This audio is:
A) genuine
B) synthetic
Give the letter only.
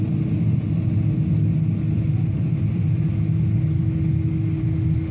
A